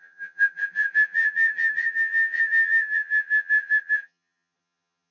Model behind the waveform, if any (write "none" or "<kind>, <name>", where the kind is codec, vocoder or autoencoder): vocoder, HiFi-GAN